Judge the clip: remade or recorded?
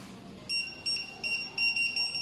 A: recorded